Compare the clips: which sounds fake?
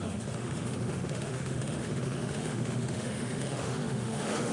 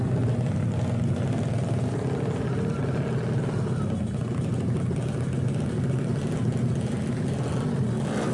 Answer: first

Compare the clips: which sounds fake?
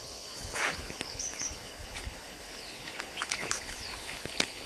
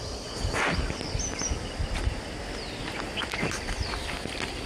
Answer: first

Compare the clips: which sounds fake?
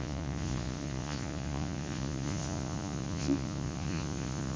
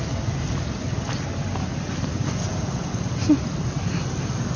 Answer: first